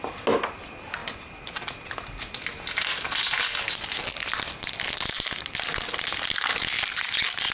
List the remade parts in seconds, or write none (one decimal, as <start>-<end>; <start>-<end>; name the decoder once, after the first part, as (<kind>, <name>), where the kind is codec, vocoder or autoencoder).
none